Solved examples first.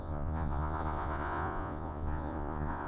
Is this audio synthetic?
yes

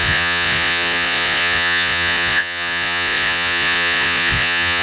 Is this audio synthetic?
yes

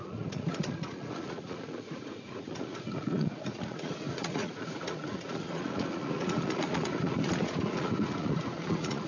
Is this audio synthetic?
yes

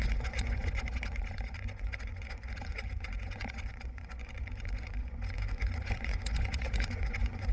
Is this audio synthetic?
yes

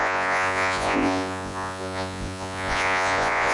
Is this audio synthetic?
yes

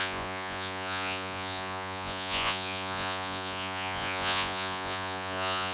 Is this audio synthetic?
yes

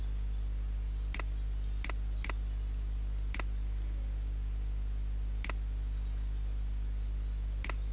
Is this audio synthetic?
no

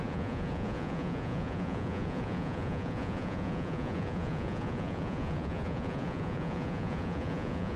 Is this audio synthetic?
yes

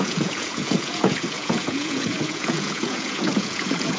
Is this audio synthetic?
yes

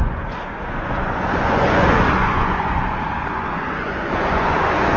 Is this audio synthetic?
yes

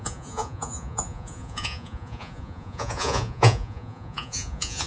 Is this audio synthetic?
yes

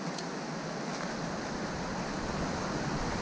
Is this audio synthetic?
no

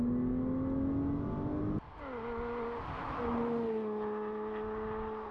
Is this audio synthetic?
no